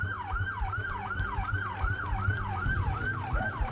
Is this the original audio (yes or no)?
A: no